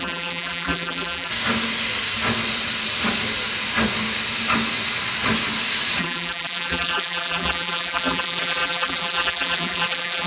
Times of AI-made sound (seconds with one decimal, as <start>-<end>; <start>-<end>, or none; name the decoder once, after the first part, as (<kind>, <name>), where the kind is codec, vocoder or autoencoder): 0.0-1.3 (vocoder, BigVGAN v2); 6.0-10.3